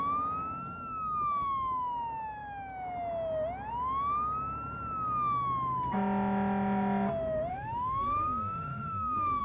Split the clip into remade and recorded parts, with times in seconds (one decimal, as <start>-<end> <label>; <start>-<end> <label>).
0.0-7.5 recorded; 7.5-9.4 remade

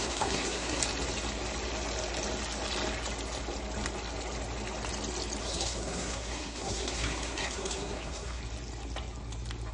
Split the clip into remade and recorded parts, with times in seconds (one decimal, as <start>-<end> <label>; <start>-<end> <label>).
0.0-0.8 remade; 0.8-5.4 recorded; 5.4-8.4 remade; 8.4-9.7 recorded

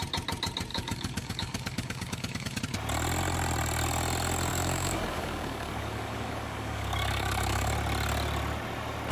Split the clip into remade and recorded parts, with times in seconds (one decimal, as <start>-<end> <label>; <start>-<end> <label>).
0.0-0.7 recorded; 0.7-2.6 remade; 2.6-4.5 recorded; 4.5-7.7 remade; 7.7-9.1 recorded

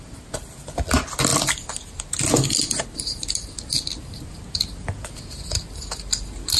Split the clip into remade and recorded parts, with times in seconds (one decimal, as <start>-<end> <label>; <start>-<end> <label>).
0.0-6.6 recorded

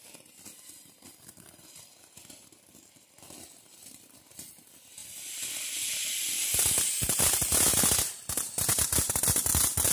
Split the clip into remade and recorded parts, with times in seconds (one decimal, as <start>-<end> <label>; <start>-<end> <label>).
0.0-9.9 recorded